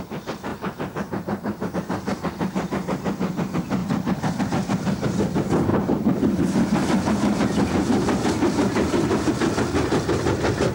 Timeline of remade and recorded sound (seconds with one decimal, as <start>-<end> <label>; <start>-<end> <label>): 0.0-0.5 recorded; 0.5-1.7 remade; 1.7-2.1 recorded; 2.1-2.7 remade; 2.7-5.7 recorded; 5.7-9.3 remade; 9.3-10.7 recorded